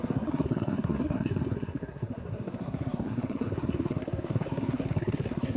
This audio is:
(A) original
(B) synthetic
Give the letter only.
B